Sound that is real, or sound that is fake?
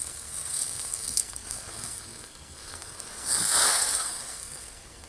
fake